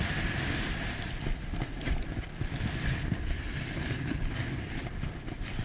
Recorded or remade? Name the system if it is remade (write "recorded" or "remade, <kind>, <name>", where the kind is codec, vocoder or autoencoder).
recorded